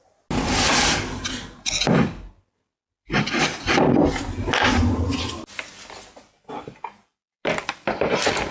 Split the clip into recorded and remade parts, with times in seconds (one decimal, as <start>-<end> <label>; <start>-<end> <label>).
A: 0.0-8.5 recorded